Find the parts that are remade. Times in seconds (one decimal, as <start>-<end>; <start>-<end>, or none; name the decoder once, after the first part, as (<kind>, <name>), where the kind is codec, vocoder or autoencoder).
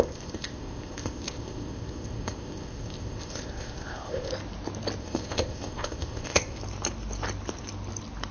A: 0.0-4.3 (codec, ZipCodec); 5.0-6.6